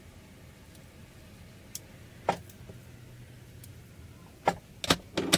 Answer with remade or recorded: recorded